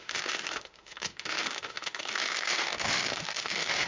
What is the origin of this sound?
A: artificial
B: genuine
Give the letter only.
A